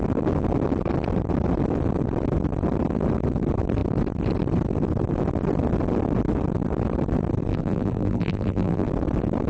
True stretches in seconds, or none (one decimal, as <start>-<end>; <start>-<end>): 0.0-7.5; 8.9-9.5